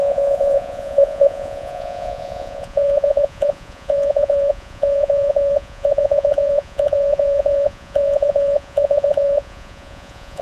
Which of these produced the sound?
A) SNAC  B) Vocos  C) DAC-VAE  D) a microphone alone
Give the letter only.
B